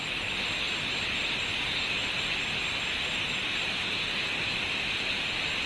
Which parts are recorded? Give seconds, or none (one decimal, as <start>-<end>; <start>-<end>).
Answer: 0.0-5.7